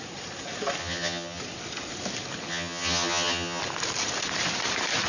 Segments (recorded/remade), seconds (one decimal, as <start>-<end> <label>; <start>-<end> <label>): 0.0-0.8 recorded; 0.8-1.4 remade; 1.4-2.5 recorded; 2.5-3.6 remade; 3.6-5.1 recorded